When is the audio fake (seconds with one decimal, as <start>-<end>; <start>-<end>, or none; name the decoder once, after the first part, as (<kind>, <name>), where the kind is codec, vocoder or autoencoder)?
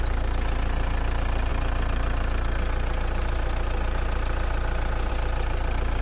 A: none